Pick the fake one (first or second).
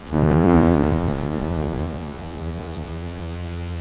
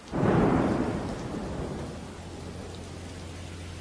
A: first